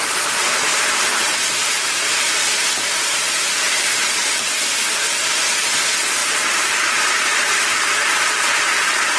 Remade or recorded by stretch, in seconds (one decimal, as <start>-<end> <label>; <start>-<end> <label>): 0.0-0.7 recorded; 0.7-4.3 remade; 4.3-6.2 recorded; 6.2-8.7 remade; 8.7-9.2 recorded